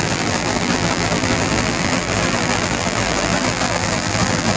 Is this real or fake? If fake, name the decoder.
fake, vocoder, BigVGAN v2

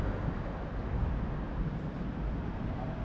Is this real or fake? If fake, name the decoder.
real